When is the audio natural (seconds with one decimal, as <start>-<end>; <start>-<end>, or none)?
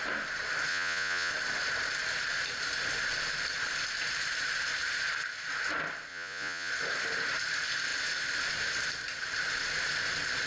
0.0-0.7; 1.3-6.1; 6.7-10.5